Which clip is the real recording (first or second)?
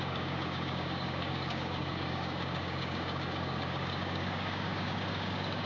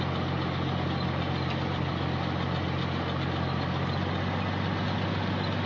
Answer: second